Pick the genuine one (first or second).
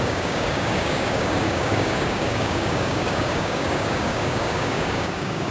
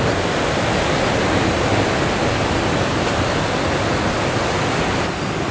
second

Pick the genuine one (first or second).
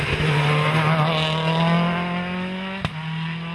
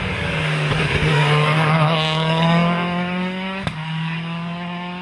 first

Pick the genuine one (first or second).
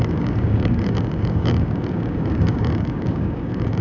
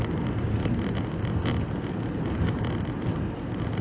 second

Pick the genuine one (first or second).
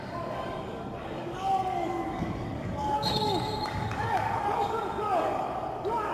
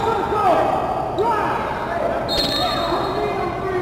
second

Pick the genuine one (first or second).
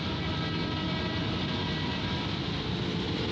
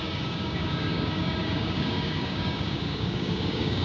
first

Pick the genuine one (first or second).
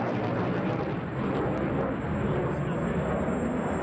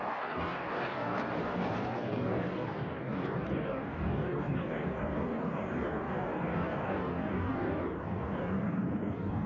first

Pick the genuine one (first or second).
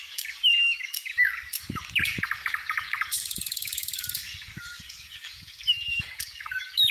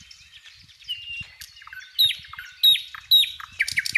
second